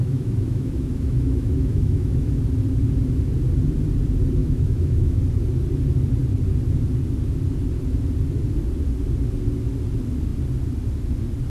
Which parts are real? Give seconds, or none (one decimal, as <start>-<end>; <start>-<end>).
2.4-4.4; 5.2-11.5